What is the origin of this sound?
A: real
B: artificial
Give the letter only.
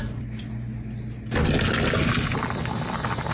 A